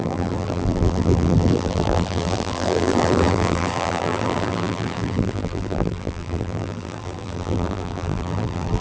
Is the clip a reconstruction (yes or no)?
yes